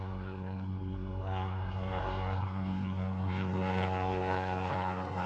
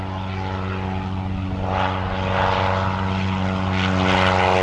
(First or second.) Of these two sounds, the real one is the second